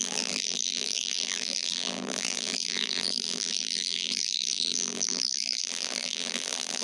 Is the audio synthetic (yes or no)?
yes